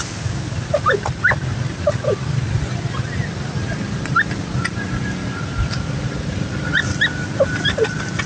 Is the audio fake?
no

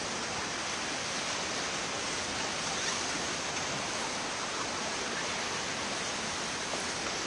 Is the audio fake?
yes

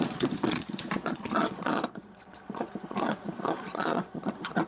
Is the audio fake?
yes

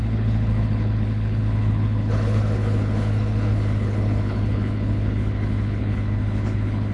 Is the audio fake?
yes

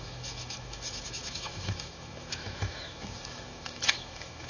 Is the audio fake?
yes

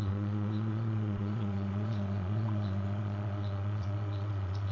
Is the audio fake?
yes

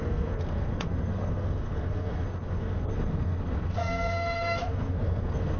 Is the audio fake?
yes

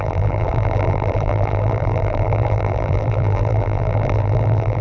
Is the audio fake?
yes